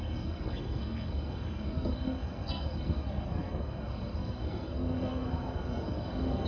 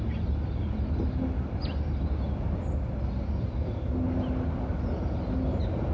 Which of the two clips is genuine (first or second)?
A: second